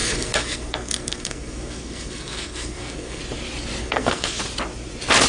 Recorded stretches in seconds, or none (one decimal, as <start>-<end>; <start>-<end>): 3.2-3.8; 4.4-5.3